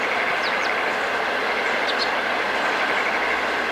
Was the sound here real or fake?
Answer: real